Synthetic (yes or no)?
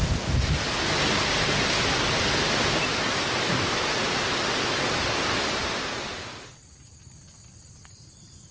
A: no